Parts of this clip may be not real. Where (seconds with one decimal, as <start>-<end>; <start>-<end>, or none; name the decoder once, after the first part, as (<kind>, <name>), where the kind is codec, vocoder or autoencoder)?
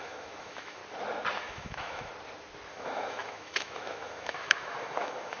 0.0-0.8 (autoencoder, DAC-VAE); 1.4-2.1; 2.7-5.4